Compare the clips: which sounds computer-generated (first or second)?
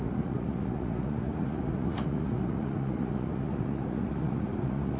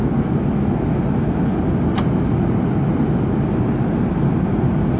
first